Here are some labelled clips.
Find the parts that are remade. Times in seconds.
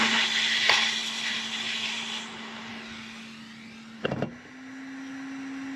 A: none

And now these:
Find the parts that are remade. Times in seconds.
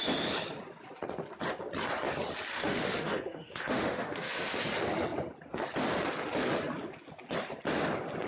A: 2.5-4.4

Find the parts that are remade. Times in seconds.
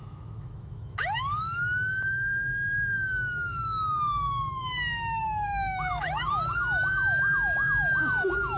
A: 0.0-8.6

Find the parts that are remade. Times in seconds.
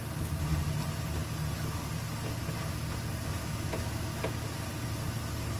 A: 3.4-4.2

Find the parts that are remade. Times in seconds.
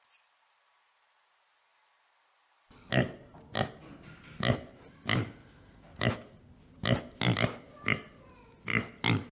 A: none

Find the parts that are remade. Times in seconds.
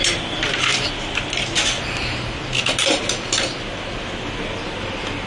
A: none